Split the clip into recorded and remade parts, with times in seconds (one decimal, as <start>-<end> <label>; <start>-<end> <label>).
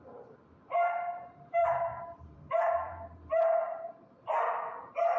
0.0-1.6 recorded; 1.6-2.7 remade; 2.7-5.2 recorded